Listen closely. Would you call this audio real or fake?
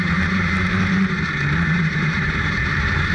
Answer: fake